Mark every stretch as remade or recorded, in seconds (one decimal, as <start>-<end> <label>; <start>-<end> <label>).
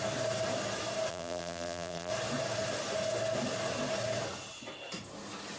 0.0-1.1 recorded; 1.1-2.1 remade; 2.1-5.6 recorded